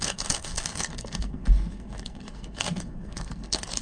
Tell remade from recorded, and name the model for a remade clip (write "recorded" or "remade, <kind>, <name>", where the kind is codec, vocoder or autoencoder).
remade, codec, SNAC